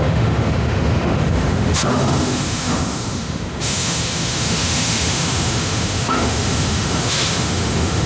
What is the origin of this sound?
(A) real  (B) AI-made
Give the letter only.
B